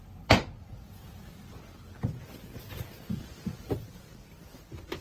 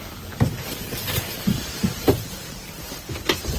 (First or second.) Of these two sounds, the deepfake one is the second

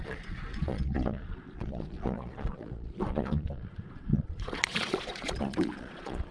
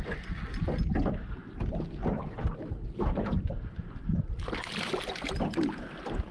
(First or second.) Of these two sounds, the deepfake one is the first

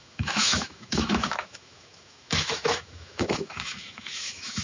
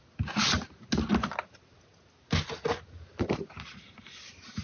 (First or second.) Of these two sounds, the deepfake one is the first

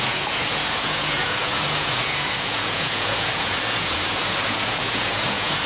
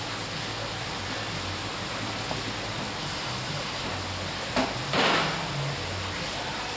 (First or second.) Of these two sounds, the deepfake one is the first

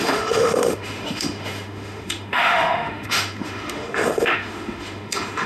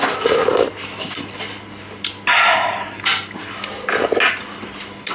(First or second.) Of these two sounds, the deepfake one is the first